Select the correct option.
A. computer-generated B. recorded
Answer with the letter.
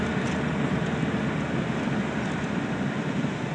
B